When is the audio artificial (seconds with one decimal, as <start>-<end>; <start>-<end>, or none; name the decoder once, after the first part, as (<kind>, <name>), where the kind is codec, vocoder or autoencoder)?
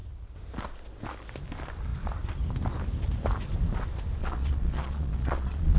4.2-5.8 (vocoder, Vocos)